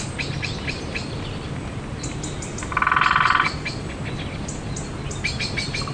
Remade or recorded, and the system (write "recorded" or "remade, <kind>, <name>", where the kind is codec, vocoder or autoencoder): recorded